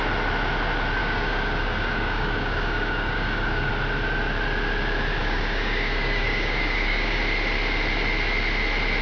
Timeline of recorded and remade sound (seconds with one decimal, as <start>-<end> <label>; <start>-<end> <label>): 0.0-1.0 recorded; 1.0-3.7 remade; 3.7-5.2 recorded; 5.2-7.2 remade; 7.2-9.0 recorded